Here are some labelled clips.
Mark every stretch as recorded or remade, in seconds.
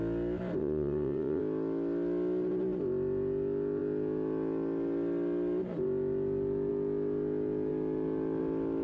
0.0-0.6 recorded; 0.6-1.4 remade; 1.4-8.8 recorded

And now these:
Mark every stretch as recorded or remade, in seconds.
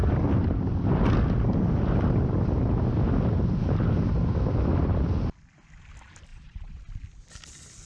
0.0-6.3 recorded; 6.3-6.8 remade; 6.8-7.9 recorded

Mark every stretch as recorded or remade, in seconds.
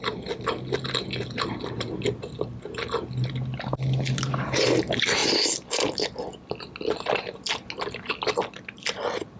0.0-9.4 recorded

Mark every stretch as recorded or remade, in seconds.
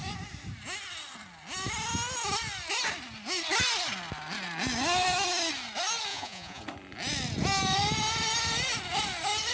0.0-6.1 recorded; 6.1-6.6 remade; 6.6-9.5 recorded